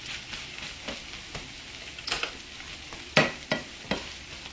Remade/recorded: recorded